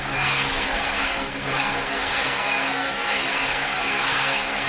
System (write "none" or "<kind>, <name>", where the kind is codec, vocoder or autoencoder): codec, SNAC